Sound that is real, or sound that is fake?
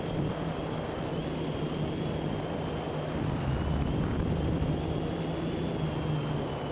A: real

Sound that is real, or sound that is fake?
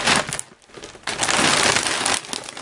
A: real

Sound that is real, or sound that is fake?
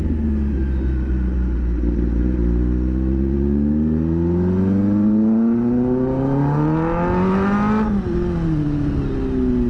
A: real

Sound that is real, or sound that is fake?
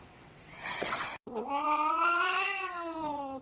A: fake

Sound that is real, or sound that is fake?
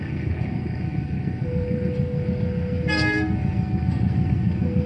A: fake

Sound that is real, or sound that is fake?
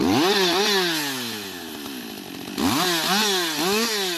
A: real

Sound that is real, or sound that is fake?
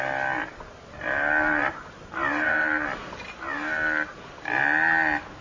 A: real